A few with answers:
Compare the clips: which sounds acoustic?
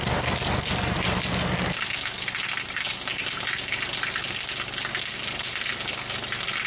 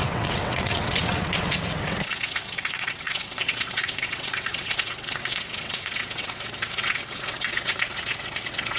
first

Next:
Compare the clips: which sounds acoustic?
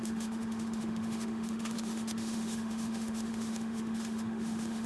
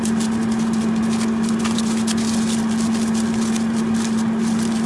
second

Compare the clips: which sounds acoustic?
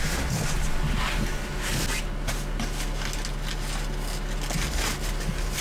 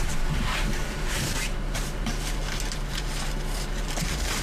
first